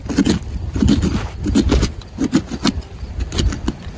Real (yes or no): yes